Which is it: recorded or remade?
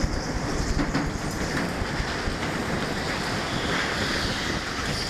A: recorded